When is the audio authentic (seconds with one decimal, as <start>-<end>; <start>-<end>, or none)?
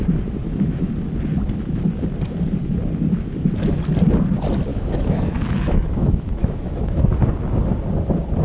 0.0-0.4; 0.9-4.7; 7.0-8.4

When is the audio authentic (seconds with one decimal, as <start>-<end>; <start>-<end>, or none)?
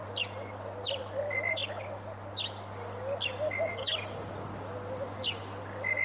0.0-6.0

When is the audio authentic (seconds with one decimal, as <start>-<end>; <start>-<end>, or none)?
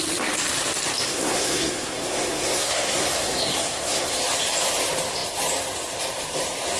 0.0-1.1; 4.2-6.8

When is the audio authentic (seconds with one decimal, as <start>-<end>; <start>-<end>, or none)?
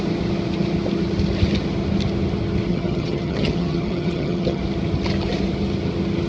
0.0-2.7; 4.6-6.3